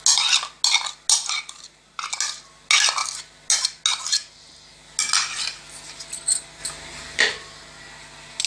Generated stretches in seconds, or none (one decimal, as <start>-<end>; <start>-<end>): none